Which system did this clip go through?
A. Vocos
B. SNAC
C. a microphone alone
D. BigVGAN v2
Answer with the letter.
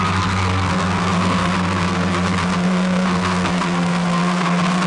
B